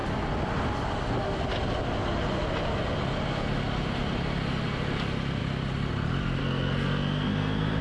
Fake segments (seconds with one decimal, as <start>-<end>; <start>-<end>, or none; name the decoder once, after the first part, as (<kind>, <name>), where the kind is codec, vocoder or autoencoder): 6.4-7.8 (codec, SNAC)